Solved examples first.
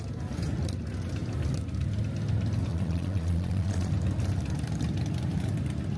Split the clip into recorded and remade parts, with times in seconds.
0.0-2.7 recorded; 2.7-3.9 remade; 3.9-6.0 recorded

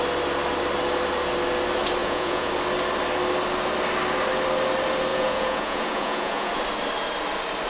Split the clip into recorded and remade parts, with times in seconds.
0.0-2.0 recorded; 2.0-2.5 remade; 2.5-5.1 recorded; 5.1-6.5 remade; 6.5-7.7 recorded

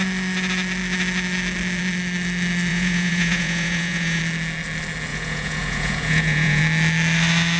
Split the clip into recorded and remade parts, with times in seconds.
0.0-2.7 recorded; 2.7-4.2 remade; 4.2-5.1 recorded; 5.1-6.6 remade; 6.6-7.6 recorded